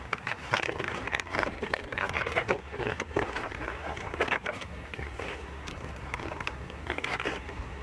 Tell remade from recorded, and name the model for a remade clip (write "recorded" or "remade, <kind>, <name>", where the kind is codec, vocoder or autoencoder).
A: remade, codec, SNAC